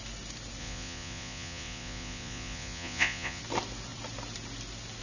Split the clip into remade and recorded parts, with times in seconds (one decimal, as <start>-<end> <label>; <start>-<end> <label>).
0.0-0.6 recorded; 0.6-3.4 remade; 3.4-5.0 recorded